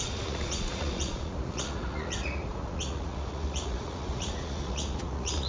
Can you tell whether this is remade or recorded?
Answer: remade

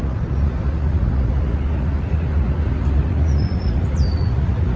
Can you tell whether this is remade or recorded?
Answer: remade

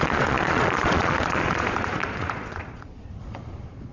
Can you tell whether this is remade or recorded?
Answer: remade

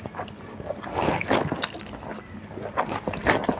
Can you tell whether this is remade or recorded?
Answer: recorded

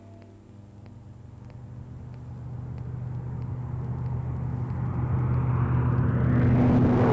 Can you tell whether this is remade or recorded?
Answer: recorded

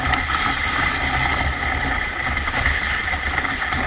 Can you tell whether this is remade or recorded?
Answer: recorded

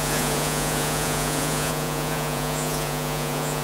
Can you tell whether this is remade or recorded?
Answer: remade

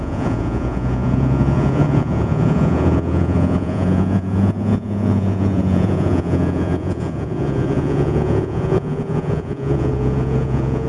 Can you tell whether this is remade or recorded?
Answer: remade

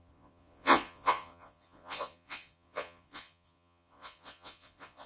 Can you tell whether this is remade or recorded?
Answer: remade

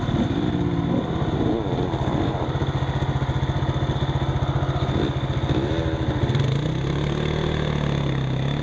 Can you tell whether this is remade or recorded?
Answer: recorded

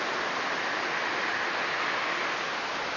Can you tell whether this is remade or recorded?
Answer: recorded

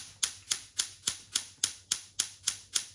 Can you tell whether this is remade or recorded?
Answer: recorded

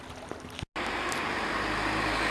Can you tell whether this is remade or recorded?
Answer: recorded